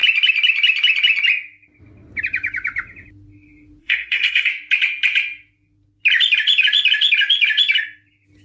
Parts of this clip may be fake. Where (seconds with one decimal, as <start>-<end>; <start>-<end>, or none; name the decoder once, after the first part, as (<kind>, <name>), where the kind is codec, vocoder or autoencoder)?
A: 3.8-4.5 (codec, SNAC)